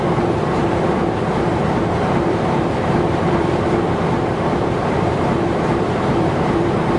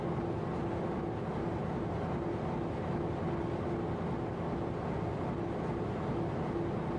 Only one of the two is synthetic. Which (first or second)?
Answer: first